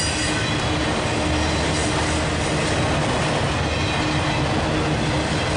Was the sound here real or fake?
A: real